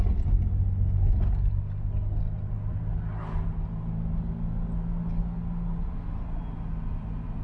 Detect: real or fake real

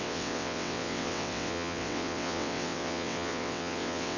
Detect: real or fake fake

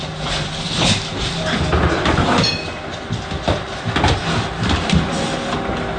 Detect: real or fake real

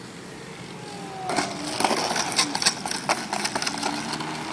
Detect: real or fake real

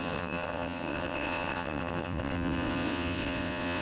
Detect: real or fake fake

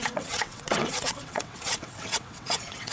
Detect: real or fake fake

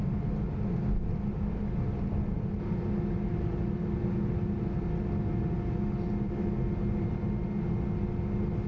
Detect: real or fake real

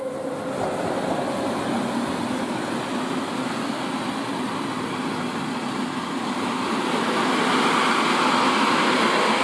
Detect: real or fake real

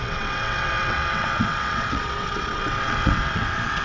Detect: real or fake fake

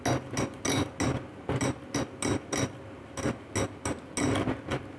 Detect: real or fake real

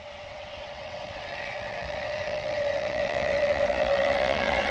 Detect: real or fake fake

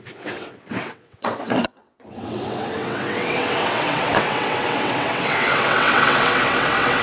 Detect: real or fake fake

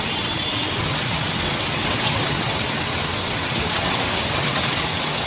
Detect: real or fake fake